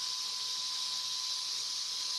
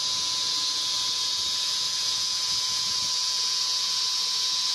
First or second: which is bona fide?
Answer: first